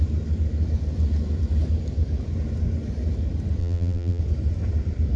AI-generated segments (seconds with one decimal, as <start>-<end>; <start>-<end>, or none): 3.6-4.2

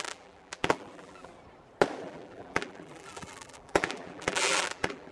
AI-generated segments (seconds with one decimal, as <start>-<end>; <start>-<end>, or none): 0.0-1.3; 2.0-5.1

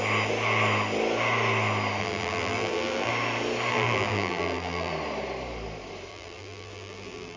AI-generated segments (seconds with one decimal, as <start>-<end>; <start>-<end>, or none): 2.0-3.1; 3.7-4.9; 6.1-7.4